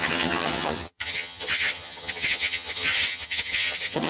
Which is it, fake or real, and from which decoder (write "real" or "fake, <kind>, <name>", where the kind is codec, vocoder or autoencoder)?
fake, vocoder, HiFi-GAN